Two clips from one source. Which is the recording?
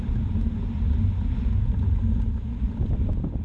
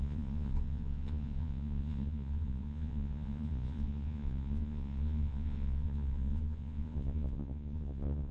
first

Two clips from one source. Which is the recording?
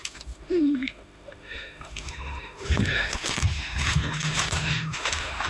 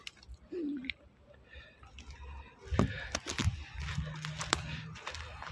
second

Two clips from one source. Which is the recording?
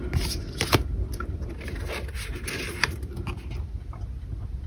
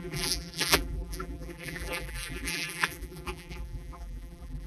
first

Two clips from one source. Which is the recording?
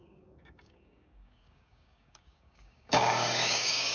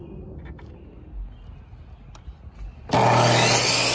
second